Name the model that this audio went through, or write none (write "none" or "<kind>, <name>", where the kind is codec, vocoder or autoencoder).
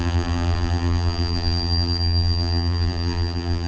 vocoder, BigVGAN v2